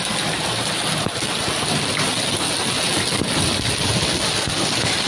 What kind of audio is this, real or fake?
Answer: real